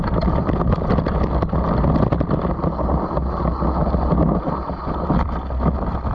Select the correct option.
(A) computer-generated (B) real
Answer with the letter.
B